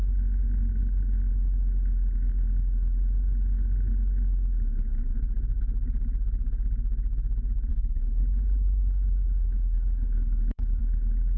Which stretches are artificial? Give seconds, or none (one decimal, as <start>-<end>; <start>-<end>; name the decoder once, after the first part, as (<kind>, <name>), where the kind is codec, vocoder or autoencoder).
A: 7.7-10.8 (codec, HILCodec)